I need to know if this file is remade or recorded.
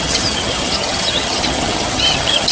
remade